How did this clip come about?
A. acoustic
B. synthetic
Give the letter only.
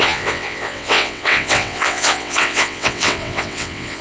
B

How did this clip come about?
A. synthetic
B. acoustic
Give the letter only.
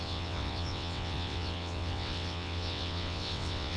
A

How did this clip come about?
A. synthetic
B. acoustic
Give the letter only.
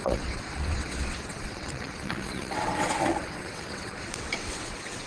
A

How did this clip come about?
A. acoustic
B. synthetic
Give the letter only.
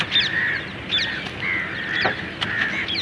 A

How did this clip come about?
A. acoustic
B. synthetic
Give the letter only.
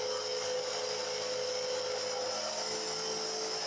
A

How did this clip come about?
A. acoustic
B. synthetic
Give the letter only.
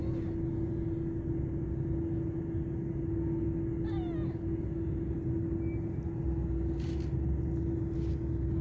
A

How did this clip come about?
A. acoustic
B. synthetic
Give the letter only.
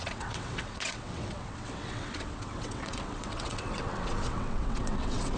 B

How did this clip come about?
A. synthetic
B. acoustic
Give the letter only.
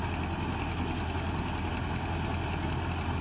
B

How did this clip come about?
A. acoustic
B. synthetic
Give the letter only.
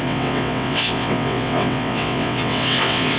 B